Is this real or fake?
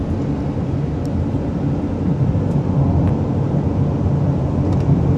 real